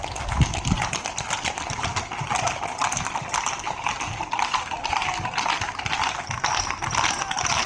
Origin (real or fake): real